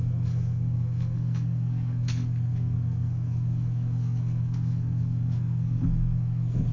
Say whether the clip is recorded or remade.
remade